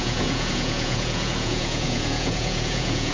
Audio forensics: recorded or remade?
remade